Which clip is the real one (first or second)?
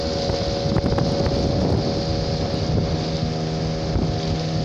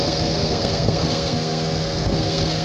first